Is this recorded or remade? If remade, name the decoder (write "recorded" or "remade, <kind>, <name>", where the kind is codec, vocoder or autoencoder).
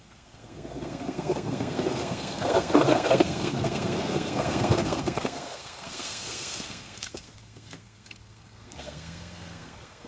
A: remade, codec, SNAC